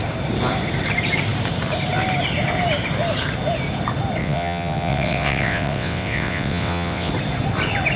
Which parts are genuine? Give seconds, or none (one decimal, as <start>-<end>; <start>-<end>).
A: 0.0-4.2; 7.1-8.0